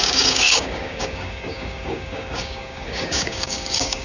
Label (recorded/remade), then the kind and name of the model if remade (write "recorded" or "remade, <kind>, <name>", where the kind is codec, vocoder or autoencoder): remade, codec, DAC